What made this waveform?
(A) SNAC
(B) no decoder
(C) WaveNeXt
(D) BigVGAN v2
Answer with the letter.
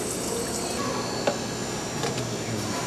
B